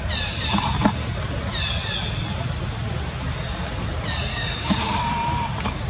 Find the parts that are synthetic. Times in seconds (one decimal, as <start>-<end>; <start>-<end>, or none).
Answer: 4.3-5.0